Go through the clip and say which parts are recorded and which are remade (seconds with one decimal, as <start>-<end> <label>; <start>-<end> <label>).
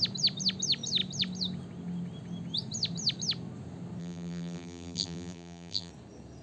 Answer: 0.0-4.0 recorded; 4.0-5.9 remade; 5.9-6.4 recorded